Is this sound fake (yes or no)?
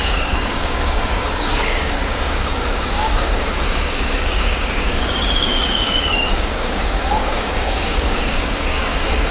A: yes